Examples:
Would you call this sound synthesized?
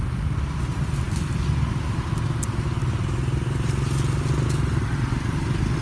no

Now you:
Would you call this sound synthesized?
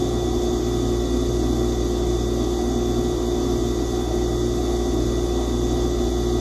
no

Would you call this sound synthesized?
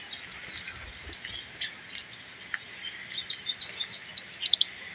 no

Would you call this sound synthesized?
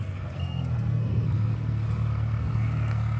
yes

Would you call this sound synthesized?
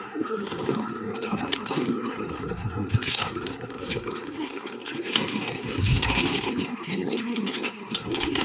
yes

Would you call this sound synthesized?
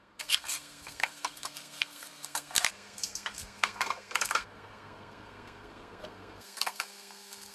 yes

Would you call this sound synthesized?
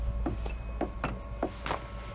no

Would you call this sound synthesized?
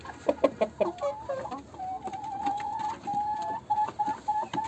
no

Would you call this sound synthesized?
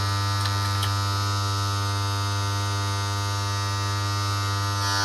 no